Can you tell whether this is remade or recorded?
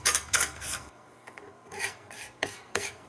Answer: remade